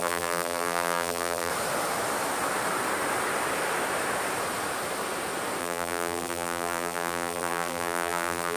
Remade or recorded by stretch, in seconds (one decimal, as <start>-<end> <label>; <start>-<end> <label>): 0.0-1.5 remade; 1.5-5.6 recorded; 5.6-8.6 remade